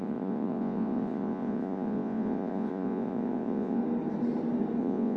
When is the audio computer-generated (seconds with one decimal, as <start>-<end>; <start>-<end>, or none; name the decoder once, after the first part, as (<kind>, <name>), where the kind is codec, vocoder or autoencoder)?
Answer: 0.0-3.8 (vocoder, Vocos); 4.8-5.2

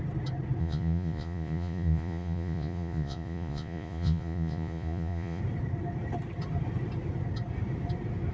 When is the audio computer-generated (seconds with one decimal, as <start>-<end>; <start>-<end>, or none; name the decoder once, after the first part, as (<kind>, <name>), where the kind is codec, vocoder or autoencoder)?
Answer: 0.6-5.4 (vocoder, Vocos)

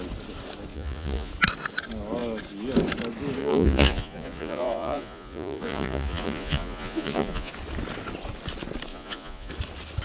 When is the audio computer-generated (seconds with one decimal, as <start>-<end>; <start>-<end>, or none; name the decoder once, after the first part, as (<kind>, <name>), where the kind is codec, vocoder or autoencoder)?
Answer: 0.7-1.3 (vocoder, Vocos); 3.4-7.5; 8.9-9.5

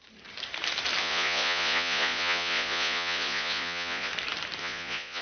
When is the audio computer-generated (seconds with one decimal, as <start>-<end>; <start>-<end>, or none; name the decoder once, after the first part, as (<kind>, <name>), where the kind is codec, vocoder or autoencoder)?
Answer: 1.0-4.1 (vocoder, Vocos); 4.6-5.2

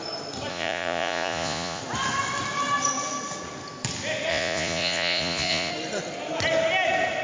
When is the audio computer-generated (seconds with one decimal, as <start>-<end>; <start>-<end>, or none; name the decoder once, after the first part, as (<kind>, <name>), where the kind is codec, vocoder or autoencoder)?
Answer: 0.5-1.8 (vocoder, Vocos); 4.3-5.7

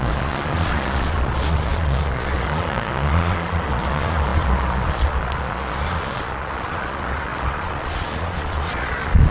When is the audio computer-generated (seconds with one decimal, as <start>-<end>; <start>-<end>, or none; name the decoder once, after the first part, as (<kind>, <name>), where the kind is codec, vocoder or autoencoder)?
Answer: 0.0-9.3 (vocoder, Vocos)

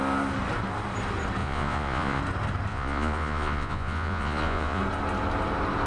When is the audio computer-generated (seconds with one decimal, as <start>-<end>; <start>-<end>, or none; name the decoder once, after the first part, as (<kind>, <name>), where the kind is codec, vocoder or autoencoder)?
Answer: 1.4-2.2 (vocoder, Vocos); 2.7-4.8

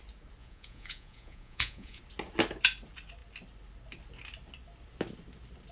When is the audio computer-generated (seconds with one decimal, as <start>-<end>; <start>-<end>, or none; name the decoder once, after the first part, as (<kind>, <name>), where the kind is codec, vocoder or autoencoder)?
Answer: 0.4-2.0 (vocoder, Vocos)